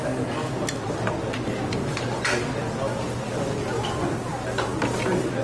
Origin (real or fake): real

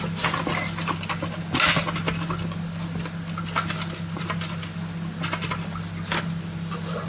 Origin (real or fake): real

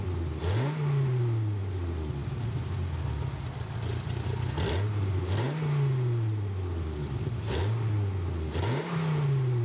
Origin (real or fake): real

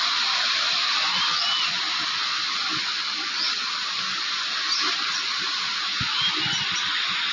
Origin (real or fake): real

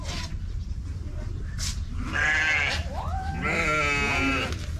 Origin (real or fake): real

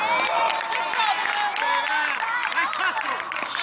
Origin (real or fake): real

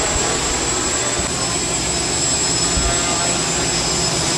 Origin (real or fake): real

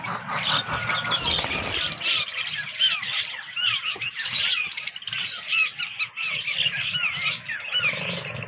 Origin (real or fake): real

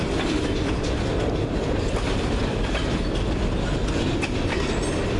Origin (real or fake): real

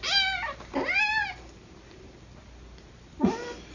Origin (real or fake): real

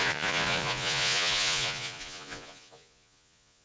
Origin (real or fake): fake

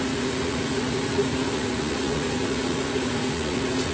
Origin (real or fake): fake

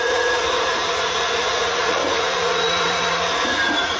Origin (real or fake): fake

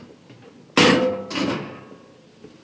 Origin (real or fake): real